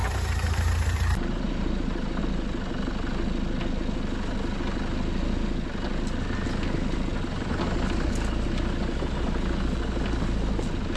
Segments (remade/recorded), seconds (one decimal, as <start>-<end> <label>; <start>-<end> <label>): 0.0-2.2 remade; 2.2-11.0 recorded

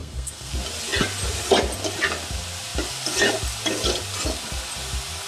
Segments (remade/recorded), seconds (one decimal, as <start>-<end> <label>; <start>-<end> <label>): 0.0-0.5 remade; 0.5-5.3 recorded

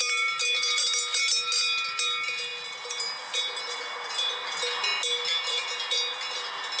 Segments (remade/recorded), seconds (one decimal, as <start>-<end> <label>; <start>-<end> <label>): 0.0-6.8 recorded

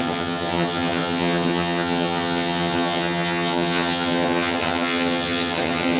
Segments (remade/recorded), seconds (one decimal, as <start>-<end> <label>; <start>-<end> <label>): 0.0-6.0 remade